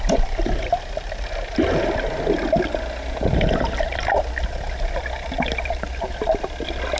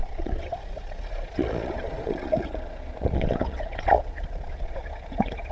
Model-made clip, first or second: second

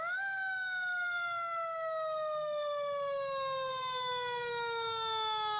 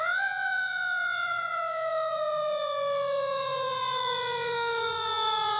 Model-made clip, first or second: second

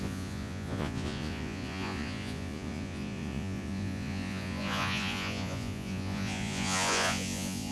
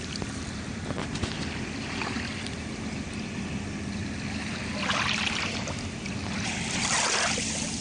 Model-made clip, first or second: first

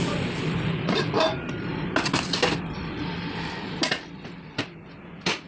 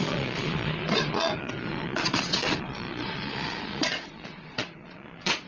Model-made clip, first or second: second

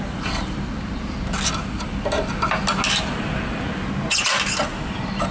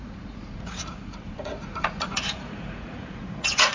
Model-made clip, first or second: second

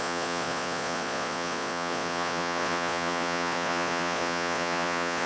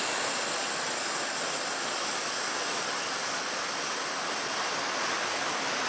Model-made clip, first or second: first